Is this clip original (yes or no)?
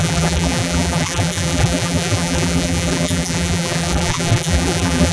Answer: no